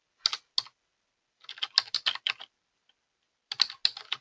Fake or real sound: real